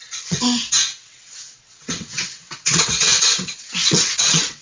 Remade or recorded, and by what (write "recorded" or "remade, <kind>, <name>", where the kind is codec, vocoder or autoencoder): remade, vocoder, WaveNeXt